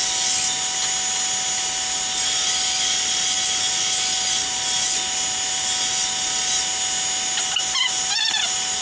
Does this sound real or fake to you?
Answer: real